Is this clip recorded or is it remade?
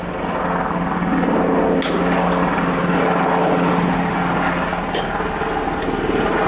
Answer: recorded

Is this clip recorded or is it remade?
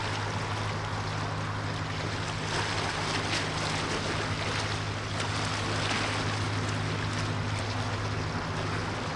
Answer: recorded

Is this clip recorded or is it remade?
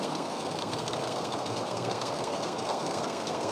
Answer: remade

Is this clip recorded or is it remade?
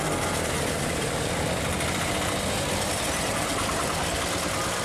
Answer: recorded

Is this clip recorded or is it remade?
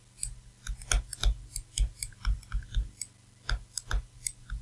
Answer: recorded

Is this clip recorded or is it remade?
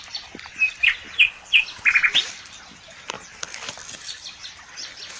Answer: recorded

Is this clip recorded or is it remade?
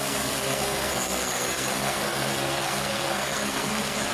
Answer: remade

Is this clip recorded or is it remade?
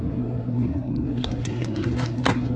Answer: remade